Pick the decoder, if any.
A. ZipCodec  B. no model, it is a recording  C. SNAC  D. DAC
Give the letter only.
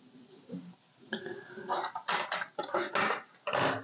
B